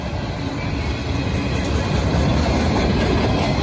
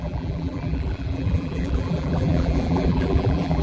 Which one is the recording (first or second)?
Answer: first